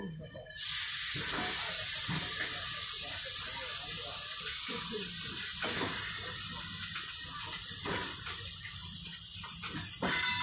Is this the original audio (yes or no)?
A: yes